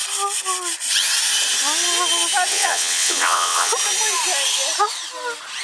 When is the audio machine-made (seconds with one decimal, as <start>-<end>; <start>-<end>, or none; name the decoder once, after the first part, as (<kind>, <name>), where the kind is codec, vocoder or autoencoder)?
2.5-3.7 (vocoder, WaveNeXt)